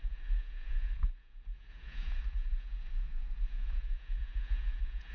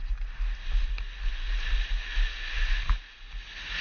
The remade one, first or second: first